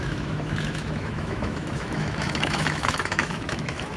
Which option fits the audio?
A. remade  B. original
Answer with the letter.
A